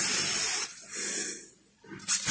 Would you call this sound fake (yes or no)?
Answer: yes